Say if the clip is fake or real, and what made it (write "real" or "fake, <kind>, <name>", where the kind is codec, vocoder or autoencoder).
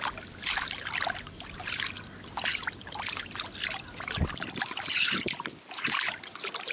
real